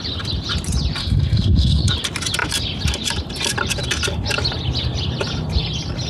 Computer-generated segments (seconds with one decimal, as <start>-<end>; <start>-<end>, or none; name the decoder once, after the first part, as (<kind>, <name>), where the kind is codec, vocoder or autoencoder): 1.0-1.9 (codec, SNAC)